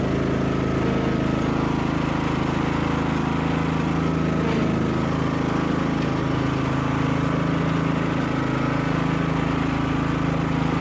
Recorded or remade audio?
recorded